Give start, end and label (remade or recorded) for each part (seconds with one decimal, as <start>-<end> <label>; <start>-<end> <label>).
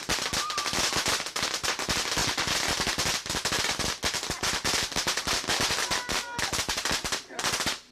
0.0-7.9 recorded